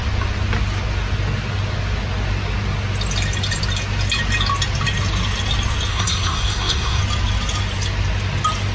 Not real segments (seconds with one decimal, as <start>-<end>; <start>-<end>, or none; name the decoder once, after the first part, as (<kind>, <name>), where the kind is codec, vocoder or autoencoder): 5.9-7.0 (codec, SNAC)